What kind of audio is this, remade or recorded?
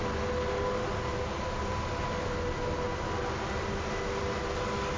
recorded